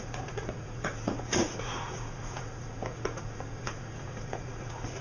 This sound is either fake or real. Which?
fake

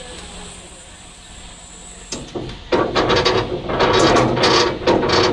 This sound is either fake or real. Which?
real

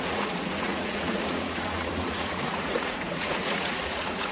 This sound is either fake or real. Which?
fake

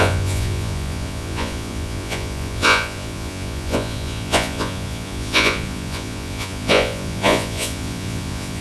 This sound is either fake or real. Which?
fake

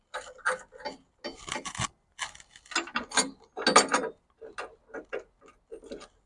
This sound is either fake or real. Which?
real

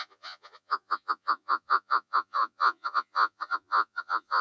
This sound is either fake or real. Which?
fake